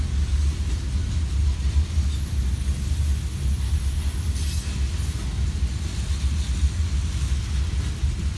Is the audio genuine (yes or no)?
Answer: yes